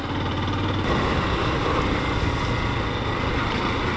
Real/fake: real